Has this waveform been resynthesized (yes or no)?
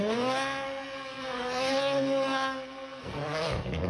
yes